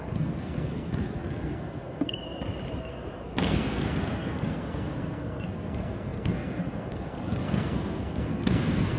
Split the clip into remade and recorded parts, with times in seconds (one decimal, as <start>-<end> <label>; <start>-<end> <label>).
0.0-2.2 remade; 2.2-2.8 recorded; 2.8-9.0 remade